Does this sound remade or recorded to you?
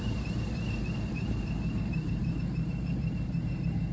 remade